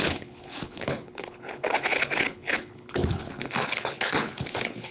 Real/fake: fake